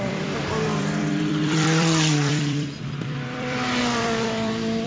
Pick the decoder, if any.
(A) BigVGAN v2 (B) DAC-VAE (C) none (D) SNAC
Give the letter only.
A